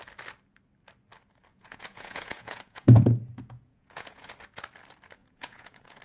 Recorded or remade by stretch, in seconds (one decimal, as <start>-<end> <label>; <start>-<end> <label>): 0.0-1.5 recorded; 1.5-4.3 remade; 4.3-5.2 recorded; 5.2-6.0 remade